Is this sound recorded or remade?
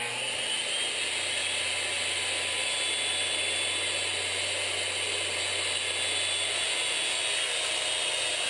recorded